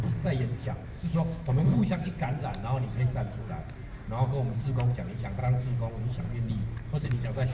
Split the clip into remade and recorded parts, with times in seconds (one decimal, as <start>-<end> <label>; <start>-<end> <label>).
0.0-0.6 recorded; 0.6-2.3 remade; 2.3-7.5 recorded